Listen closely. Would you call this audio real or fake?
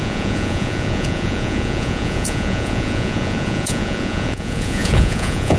fake